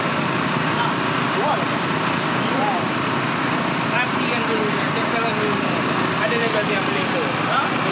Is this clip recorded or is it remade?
recorded